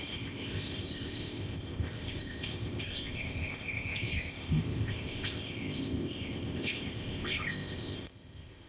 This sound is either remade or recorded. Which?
remade